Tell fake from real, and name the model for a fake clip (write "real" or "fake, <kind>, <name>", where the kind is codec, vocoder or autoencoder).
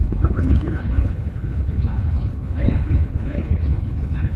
fake, codec, HILCodec